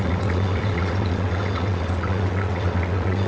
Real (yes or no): no